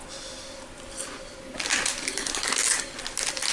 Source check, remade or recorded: recorded